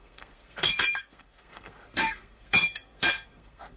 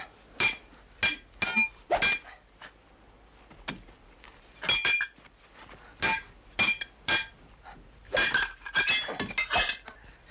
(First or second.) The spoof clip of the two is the first